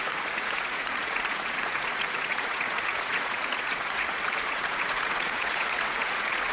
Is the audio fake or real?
fake